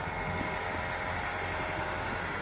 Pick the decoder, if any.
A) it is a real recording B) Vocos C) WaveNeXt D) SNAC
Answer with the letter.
A